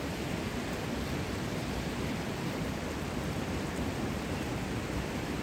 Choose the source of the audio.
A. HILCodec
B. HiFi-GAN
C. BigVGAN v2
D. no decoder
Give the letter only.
C